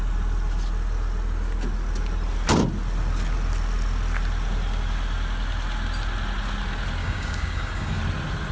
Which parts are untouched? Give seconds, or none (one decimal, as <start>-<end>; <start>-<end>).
0.0-7.0; 8.0-8.5